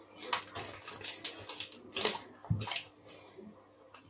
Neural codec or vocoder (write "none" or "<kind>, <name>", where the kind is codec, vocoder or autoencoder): none